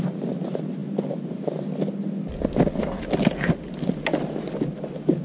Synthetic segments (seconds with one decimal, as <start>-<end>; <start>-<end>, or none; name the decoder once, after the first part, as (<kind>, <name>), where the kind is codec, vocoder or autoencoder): none